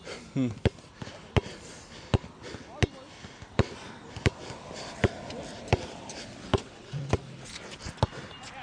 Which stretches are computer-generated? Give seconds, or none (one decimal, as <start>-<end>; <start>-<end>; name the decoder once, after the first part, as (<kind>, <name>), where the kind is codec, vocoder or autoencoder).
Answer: 6.6-7.1 (vocoder, WaveNeXt)

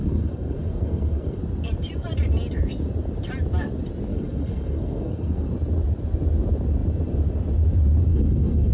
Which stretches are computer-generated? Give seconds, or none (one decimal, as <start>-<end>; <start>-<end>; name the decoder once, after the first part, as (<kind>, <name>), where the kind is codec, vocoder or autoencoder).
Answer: 0.0-1.4 (codec, SNAC); 4.1-5.5; 8.1-8.7

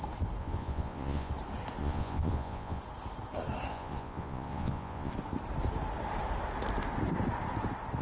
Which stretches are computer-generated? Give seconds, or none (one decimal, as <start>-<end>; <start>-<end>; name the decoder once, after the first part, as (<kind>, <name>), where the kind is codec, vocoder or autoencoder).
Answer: 0.4-1.3 (vocoder, Vocos); 1.8-2.8; 3.7-5.1

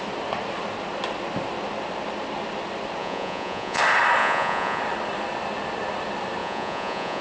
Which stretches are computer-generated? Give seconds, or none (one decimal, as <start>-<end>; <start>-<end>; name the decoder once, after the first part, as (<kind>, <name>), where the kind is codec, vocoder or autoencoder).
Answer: 3.0-3.8 (vocoder, Vocos); 4.2-4.8; 6.4-7.2

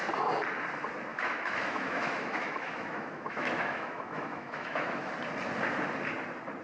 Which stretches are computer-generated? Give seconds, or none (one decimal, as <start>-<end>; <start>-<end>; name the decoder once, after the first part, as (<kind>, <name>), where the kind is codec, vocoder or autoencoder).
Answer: 1.1-5.1 (autoencoder, DAC-VAE)

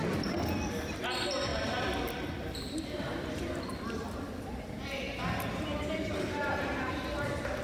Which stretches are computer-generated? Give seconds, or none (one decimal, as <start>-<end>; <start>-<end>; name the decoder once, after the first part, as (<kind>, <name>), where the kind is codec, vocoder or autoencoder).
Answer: 1.5-6.1 (vocoder, BigVGAN v2)

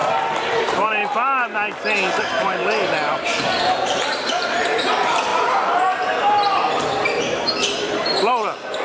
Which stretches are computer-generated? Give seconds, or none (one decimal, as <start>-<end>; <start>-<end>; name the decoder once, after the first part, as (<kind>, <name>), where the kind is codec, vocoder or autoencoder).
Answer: 0.6-1.0 (vocoder, BigVGAN v2); 2.1-2.6; 3.1-8.8